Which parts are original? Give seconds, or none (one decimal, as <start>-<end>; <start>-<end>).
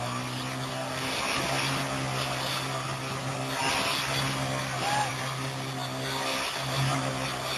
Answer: 0.0-0.7; 1.2-7.6